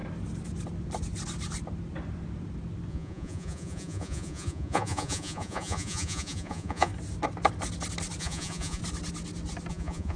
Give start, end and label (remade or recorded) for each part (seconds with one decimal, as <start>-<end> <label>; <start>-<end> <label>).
0.0-2.9 recorded; 2.9-6.9 remade; 6.9-8.2 recorded; 8.2-8.8 remade; 8.8-9.7 recorded; 9.7-10.2 remade